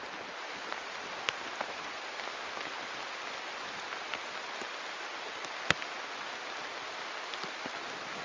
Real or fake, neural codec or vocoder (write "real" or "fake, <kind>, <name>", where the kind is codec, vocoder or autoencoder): real